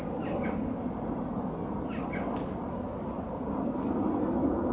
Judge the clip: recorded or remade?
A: recorded